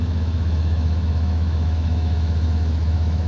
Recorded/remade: remade